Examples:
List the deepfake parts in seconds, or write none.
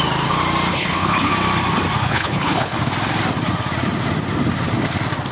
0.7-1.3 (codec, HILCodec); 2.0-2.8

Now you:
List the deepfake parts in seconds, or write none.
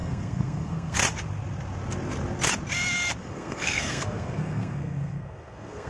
0.0-1.0 (codec, SNAC); 3.2-5.9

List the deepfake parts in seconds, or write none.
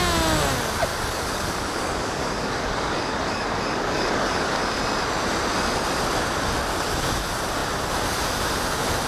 0.9-4.8 (codec, DAC)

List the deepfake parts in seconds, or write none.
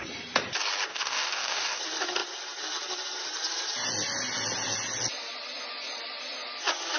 0.9-1.8 (codec, DAC)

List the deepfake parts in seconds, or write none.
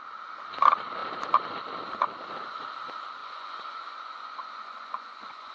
3.2-5.5 (vocoder, Vocos)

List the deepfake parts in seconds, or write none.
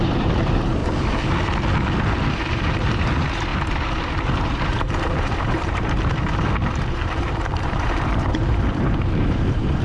0.0-0.8 (vocoder, BigVGAN v2); 2.3-9.8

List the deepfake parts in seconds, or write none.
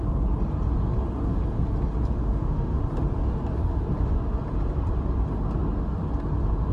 2.2-2.8 (autoencoder, DAC-VAE)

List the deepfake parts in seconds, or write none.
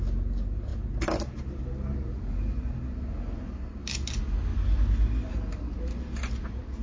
none